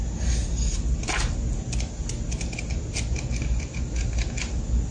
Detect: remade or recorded recorded